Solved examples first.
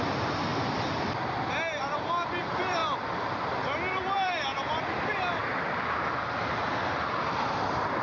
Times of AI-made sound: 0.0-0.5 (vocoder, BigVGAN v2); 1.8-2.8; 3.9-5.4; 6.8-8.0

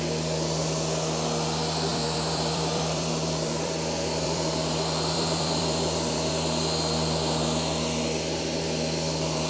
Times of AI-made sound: 1.9-6.3 (vocoder, BigVGAN v2)

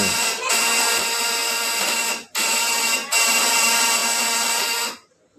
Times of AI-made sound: none

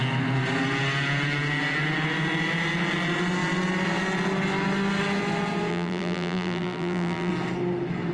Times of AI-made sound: 5.7-7.3 (vocoder, BigVGAN v2)

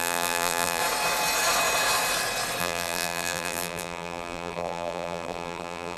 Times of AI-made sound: 0.0-0.8 (vocoder, BigVGAN v2); 2.6-6.0

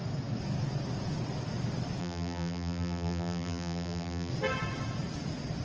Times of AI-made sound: 2.0-4.3 (vocoder, BigVGAN v2)

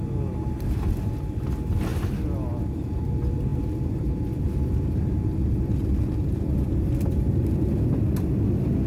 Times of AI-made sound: 1.9-3.1 (vocoder, BigVGAN v2); 3.5-4.4; 5.8-8.0